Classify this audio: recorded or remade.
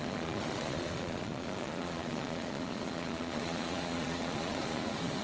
remade